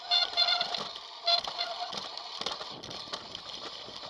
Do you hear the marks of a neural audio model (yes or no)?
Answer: no